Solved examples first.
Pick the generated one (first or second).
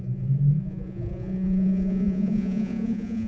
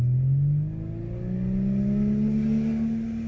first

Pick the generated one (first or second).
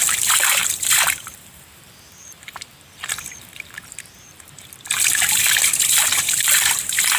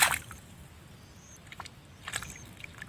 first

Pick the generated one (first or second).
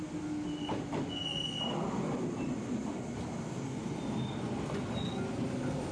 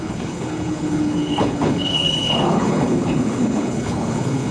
second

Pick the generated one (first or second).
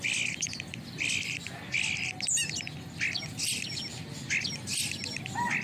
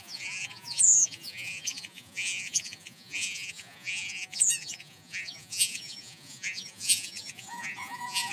second